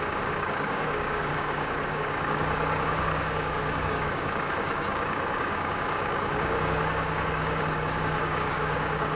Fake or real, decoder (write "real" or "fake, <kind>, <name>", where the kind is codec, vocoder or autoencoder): fake, codec, DAC